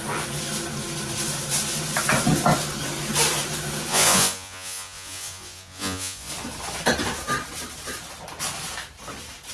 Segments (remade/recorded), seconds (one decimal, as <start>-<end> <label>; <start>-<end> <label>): 0.0-3.9 recorded; 3.9-6.3 remade; 6.3-9.5 recorded